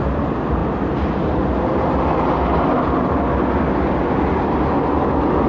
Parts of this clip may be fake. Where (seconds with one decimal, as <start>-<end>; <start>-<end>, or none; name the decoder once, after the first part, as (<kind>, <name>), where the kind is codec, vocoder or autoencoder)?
none